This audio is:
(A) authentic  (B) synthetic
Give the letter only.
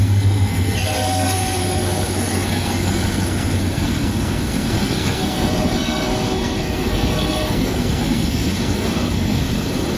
B